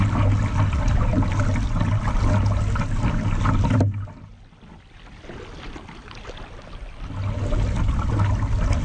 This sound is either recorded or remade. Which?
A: recorded